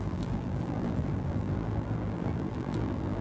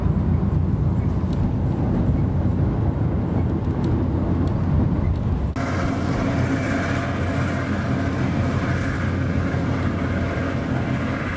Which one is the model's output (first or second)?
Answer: first